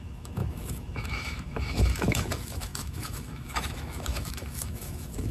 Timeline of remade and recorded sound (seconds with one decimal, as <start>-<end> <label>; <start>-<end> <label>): 0.0-5.3 remade